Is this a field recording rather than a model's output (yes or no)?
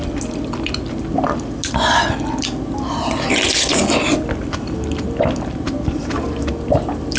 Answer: yes